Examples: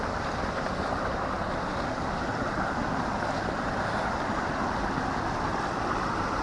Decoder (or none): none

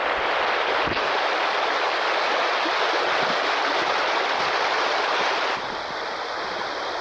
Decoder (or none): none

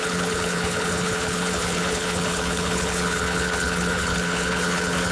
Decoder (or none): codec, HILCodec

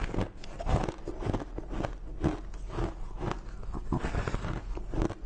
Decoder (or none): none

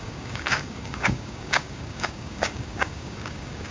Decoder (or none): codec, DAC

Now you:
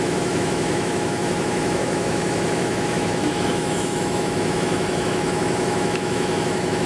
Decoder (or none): autoencoder, DAC-VAE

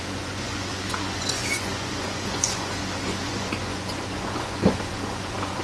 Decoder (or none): vocoder, Vocos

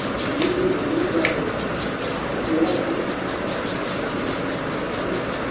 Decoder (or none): none